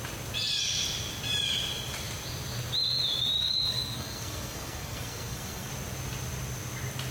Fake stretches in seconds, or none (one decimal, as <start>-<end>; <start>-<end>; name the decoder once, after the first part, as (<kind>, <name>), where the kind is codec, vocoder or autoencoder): 3.4-5.7 (codec, SNAC)